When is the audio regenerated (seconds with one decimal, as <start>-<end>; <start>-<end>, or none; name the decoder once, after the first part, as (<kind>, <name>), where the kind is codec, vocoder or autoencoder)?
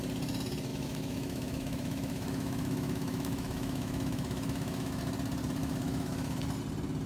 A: 0.7-5.0 (autoencoder, DAC-VAE); 5.6-6.4